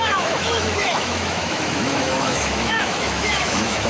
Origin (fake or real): fake